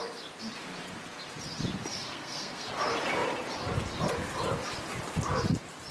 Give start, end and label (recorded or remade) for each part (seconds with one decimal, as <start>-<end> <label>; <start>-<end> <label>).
0.0-1.9 recorded; 1.9-2.7 remade; 2.7-5.9 recorded